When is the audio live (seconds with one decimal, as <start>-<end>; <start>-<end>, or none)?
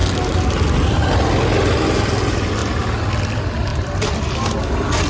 0.0-3.7